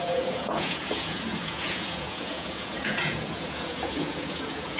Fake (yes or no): yes